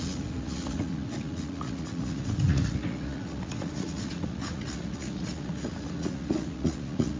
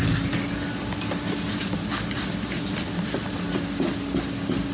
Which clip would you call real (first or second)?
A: second